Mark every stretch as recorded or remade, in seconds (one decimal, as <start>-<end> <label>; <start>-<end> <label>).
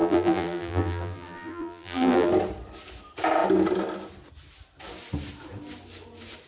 0.0-2.3 remade; 2.3-6.5 recorded